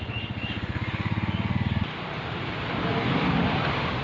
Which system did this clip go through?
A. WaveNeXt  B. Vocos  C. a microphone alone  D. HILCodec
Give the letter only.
C